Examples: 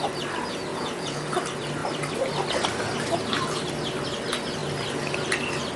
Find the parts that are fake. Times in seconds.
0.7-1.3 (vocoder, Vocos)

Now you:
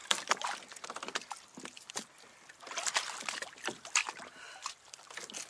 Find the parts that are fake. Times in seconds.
none

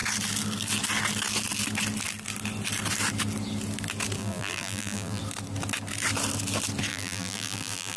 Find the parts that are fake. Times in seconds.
4.2-5.2 (vocoder, BigVGAN v2); 6.9-8.0

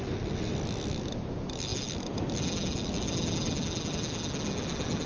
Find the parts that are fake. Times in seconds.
none

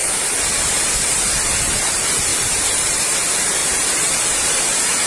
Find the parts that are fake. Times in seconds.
0.0-1.6 (vocoder, BigVGAN v2); 2.3-3.0; 3.6-4.1

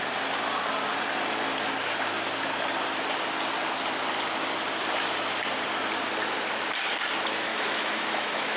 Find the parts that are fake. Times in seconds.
7.5-8.6 (autoencoder, DAC-VAE)

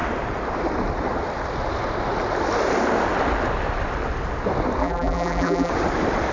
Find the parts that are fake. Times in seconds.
4.8-5.7 (vocoder, BigVGAN v2)